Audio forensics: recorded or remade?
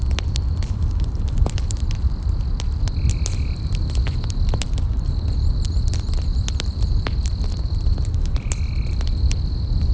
remade